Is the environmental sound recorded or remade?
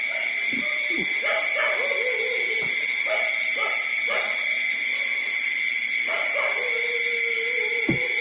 recorded